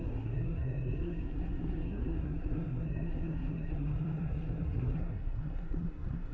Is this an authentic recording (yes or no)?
no